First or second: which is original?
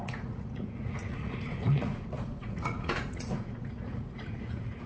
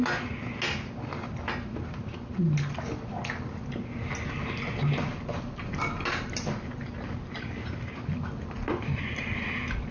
second